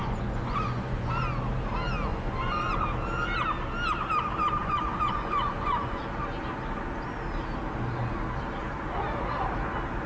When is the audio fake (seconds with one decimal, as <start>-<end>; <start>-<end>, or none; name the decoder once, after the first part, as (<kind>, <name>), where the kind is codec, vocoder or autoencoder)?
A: 0.0-1.1 (vocoder, Vocos); 2.1-2.7; 4.6-6.0